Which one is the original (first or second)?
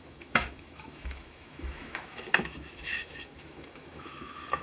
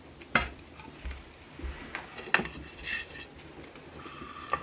second